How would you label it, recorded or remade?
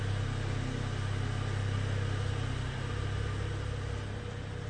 recorded